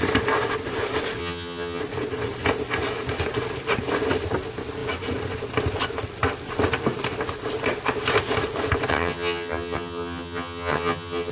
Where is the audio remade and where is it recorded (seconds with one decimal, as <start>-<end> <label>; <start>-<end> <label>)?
0.0-1.2 recorded; 1.2-1.8 remade; 1.8-8.9 recorded; 8.9-11.3 remade